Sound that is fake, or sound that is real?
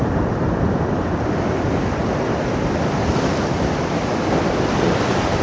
real